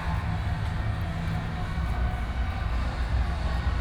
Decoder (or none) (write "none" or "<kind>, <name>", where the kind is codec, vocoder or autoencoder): none